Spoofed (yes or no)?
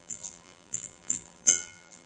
yes